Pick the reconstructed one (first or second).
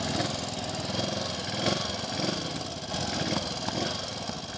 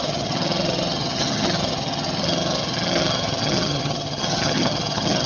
second